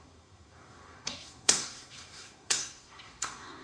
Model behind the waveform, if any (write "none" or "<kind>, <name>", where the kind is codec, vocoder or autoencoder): codec, SNAC